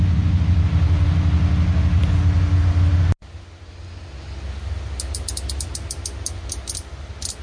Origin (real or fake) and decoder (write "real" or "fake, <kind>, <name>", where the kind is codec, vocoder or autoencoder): real